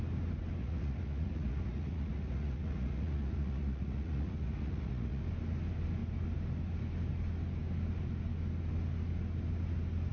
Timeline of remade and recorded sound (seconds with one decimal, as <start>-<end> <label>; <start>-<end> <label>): 0.0-0.6 recorded; 0.6-5.2 remade; 5.2-10.1 recorded